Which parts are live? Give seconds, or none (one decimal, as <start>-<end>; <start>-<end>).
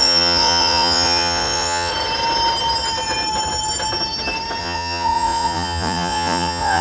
1.9-4.6